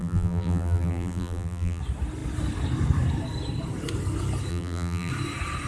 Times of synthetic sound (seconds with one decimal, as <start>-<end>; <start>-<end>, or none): 0.0-1.8; 4.5-5.1